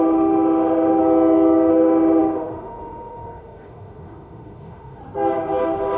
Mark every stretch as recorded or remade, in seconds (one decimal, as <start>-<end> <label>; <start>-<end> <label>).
0.0-1.0 remade; 1.0-1.7 recorded; 1.7-5.0 remade; 5.0-5.6 recorded; 5.6-6.0 remade